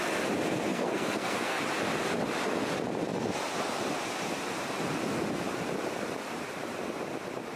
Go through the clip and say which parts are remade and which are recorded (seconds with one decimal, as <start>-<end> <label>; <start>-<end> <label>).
0.0-0.7 recorded; 0.7-1.6 remade; 1.6-7.6 recorded